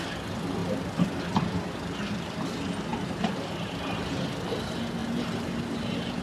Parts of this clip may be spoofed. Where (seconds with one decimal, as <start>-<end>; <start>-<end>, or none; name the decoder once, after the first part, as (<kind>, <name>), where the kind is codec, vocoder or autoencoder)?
0.6-1.2 (vocoder, BigVGAN v2); 2.9-4.1; 5.0-6.2